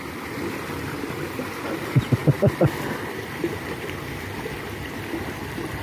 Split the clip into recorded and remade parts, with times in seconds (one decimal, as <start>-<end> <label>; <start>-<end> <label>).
0.0-5.8 remade